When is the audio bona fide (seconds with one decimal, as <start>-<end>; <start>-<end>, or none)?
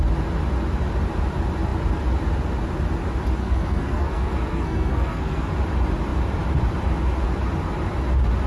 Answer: 0.0-3.4; 5.5-8.5